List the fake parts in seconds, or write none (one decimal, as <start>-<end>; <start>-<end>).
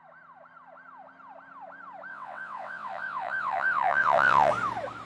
2.1-4.5